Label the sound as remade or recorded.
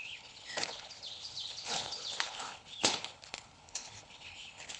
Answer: remade